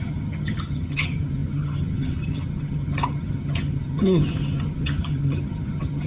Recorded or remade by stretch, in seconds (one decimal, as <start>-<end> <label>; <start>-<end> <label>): 0.0-6.1 remade